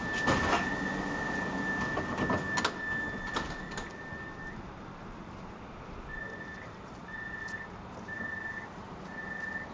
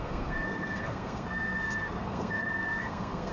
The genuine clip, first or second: first